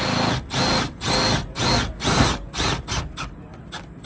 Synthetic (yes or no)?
no